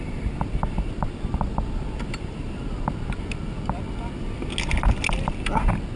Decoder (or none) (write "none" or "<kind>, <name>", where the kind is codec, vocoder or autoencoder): none